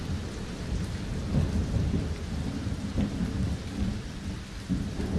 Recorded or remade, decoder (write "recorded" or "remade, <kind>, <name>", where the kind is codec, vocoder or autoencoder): recorded